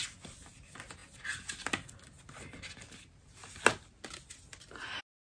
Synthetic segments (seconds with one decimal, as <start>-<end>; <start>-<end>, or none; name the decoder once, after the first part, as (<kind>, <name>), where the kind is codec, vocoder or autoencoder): none

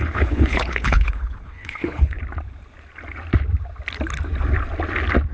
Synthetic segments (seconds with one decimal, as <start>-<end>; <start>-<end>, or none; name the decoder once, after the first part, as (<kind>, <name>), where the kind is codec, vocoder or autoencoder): 0.0-2.2 (codec, HILCodec)